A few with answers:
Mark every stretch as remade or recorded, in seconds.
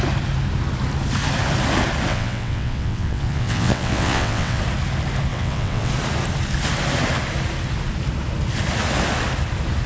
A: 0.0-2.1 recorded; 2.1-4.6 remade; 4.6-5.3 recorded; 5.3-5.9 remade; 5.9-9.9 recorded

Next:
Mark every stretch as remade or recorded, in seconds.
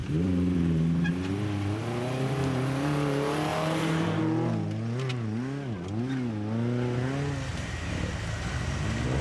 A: 0.0-1.1 remade; 1.1-3.5 recorded; 3.5-4.2 remade; 4.2-7.5 recorded; 7.5-8.6 remade; 8.6-9.2 recorded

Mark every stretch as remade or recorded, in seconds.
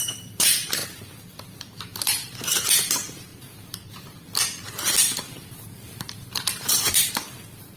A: 0.0-7.8 remade